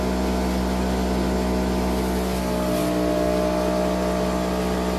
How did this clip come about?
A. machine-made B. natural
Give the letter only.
B